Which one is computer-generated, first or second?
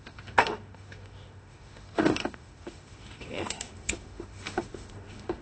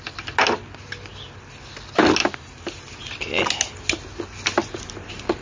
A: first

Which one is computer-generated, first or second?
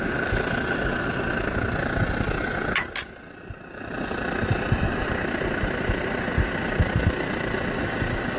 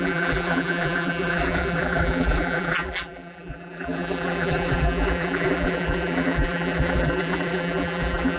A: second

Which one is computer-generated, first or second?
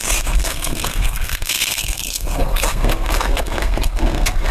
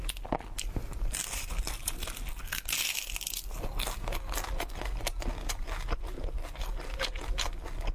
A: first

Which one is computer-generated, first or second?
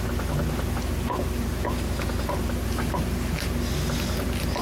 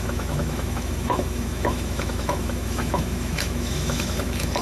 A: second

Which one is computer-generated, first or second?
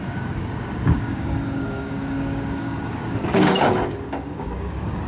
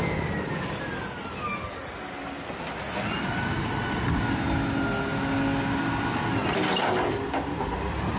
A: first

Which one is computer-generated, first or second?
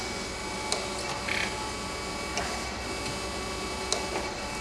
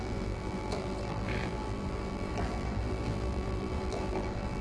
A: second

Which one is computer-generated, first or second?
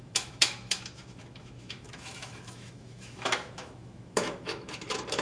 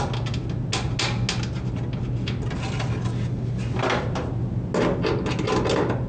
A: first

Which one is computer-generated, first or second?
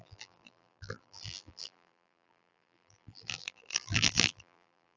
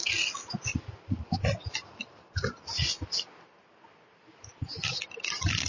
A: first